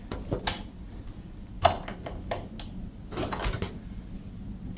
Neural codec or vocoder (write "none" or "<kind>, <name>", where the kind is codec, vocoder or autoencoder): none